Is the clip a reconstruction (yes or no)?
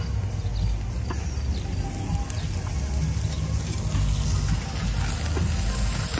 no